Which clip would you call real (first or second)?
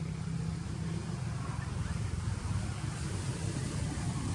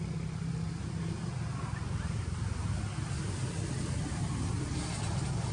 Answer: second